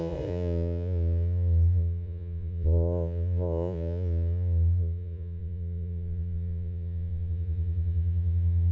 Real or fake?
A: fake